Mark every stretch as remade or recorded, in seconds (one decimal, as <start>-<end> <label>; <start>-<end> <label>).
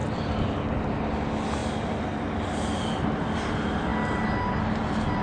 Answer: 0.0-5.2 recorded